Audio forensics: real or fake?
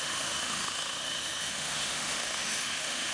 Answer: fake